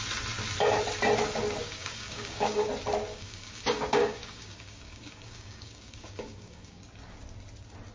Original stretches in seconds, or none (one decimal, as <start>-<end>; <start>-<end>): 0.0-1.6; 2.7-3.1; 6.8-7.9